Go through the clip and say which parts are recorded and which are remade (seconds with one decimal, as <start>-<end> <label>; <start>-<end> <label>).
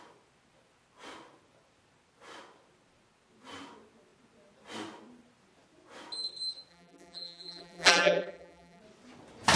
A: 0.0-6.7 recorded; 6.7-8.8 remade; 8.8-9.6 recorded